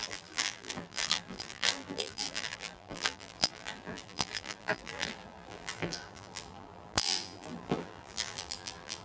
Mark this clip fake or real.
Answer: fake